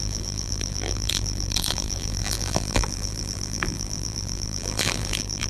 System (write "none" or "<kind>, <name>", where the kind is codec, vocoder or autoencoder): vocoder, BigVGAN v2